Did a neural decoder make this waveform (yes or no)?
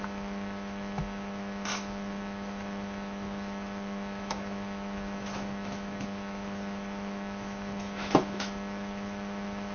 yes